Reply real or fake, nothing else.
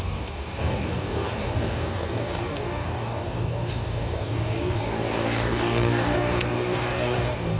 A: fake